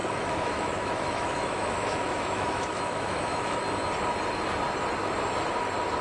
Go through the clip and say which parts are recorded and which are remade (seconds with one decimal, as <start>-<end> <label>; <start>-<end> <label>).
0.0-3.6 remade; 3.6-6.0 recorded